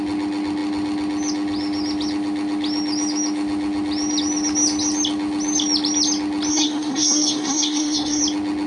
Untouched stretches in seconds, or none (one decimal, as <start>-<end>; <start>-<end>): 0.0-6.5; 8.2-8.7